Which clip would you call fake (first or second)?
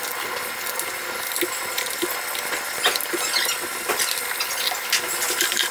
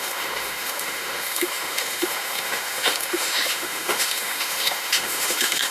second